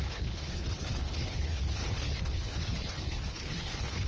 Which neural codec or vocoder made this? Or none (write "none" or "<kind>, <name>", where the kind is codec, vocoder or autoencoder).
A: codec, HILCodec